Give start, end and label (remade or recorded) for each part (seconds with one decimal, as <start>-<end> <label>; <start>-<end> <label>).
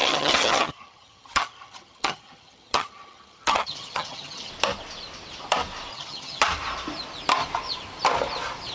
0.0-4.5 remade; 4.5-5.9 recorded; 5.9-6.4 remade; 6.4-8.7 recorded